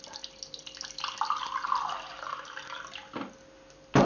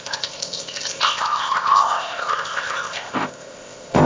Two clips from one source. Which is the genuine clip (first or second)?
first